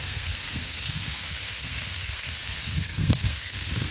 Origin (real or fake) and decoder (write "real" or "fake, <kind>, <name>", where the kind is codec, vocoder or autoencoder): fake, codec, SNAC